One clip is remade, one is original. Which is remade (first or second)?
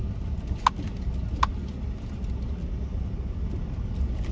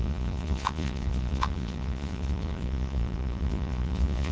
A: second